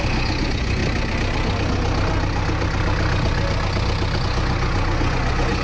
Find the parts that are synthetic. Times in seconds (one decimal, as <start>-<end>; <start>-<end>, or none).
0.0-0.8; 4.2-5.6